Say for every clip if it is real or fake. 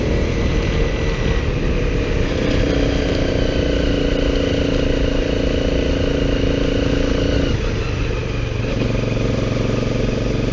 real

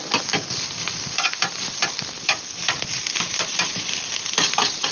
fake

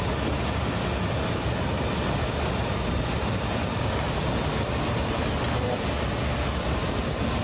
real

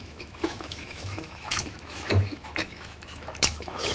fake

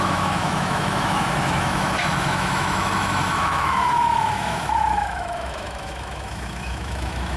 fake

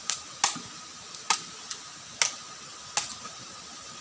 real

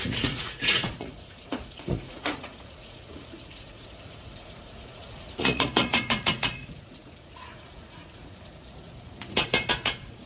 fake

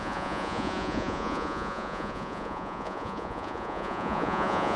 fake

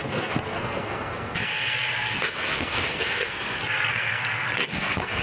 fake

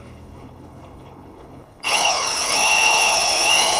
fake